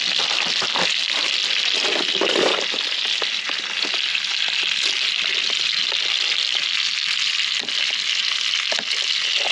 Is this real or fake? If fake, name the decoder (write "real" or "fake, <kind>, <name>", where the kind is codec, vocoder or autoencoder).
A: real